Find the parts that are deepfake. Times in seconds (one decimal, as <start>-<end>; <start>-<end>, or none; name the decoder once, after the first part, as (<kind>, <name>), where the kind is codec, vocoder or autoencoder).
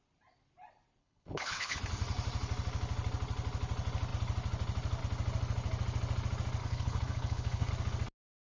1.0-1.8 (codec, HILCodec); 6.6-7.7